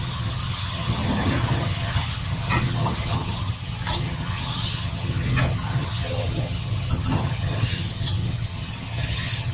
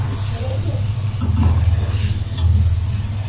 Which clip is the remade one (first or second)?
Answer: first